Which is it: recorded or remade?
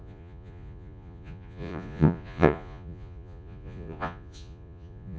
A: remade